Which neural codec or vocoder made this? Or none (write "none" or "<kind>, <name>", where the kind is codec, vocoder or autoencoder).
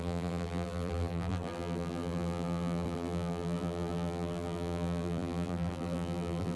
vocoder, BigVGAN v2